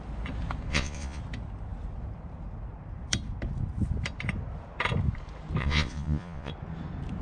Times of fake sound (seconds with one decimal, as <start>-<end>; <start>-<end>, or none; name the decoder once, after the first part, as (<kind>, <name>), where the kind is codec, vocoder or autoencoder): 0.7-1.2 (vocoder, Vocos); 5.6-6.5